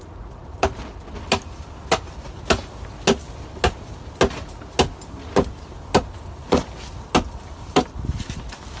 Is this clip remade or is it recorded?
recorded